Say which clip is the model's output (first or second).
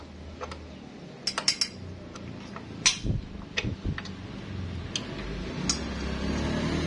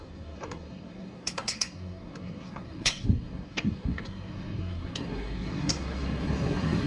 second